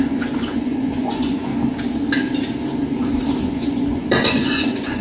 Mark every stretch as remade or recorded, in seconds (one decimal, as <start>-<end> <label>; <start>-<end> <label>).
0.0-1.5 remade; 1.5-3.4 recorded; 3.4-5.0 remade